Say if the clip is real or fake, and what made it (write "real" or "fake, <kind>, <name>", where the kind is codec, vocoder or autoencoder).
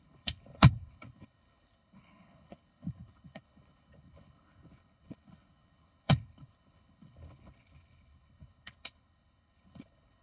fake, codec, HILCodec